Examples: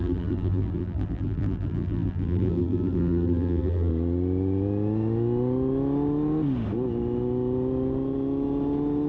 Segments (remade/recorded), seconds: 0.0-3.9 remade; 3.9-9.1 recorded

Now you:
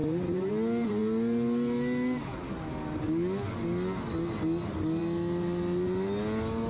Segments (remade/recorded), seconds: 0.0-0.5 remade; 0.5-6.7 recorded

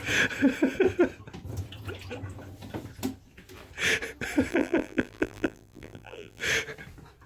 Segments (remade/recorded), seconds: 0.0-4.5 recorded; 4.5-6.4 remade; 6.4-7.3 recorded

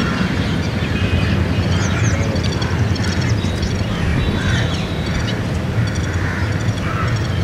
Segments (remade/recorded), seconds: 0.0-0.6 remade; 0.6-4.1 recorded; 4.1-5.2 remade; 5.2-7.4 recorded

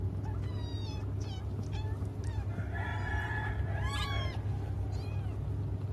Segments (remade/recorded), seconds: 0.0-2.9 recorded; 2.9-3.5 remade; 3.5-5.9 recorded

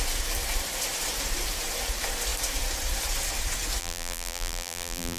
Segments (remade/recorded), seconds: 0.0-3.8 recorded; 3.8-5.2 remade